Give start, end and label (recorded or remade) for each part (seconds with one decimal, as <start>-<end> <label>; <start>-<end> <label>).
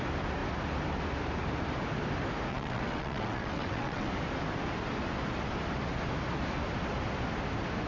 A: 0.0-2.5 recorded; 2.5-4.1 remade; 4.1-7.9 recorded